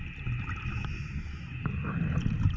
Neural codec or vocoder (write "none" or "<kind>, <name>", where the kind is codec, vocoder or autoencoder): none